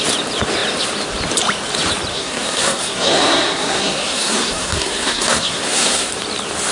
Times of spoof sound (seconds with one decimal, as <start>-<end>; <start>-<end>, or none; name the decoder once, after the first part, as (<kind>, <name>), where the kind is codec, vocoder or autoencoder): 2.1-6.1 (codec, SNAC)